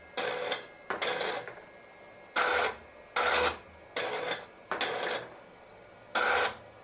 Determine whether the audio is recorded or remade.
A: recorded